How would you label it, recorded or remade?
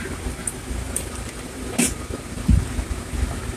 recorded